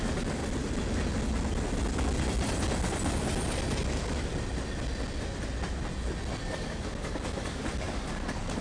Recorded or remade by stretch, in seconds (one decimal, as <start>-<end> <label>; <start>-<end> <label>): 0.0-0.4 remade; 0.4-3.9 recorded; 3.9-4.3 remade; 4.3-6.5 recorded; 6.5-8.6 remade